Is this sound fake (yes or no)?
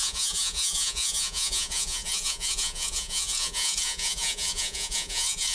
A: yes